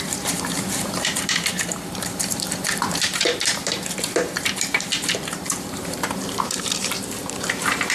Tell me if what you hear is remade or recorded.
remade